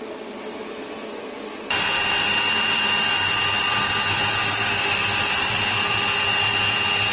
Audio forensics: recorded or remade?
recorded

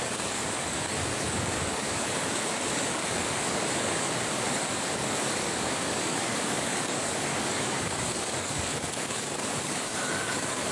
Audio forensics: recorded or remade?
remade